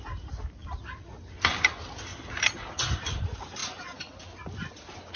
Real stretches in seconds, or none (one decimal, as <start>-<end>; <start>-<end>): 0.0-2.1; 3.2-5.2